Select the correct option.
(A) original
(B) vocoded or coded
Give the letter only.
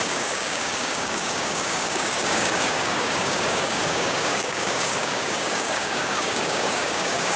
B